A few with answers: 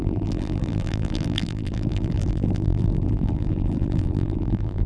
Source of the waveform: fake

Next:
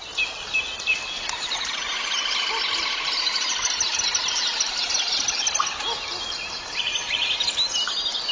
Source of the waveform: real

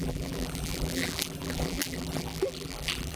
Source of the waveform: fake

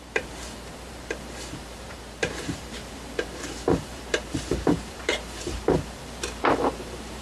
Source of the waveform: fake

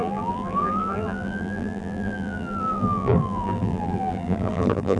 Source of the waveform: fake